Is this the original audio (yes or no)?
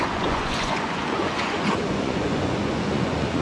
no